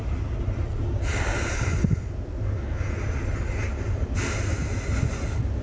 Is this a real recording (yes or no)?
yes